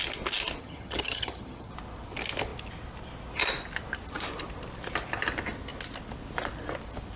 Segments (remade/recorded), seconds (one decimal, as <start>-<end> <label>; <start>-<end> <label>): 0.0-0.6 recorded; 0.6-1.7 remade; 1.7-7.2 recorded